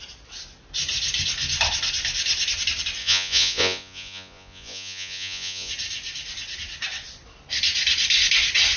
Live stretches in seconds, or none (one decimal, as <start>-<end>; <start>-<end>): 0.0-3.0; 5.7-8.8